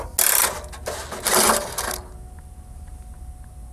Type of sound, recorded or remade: recorded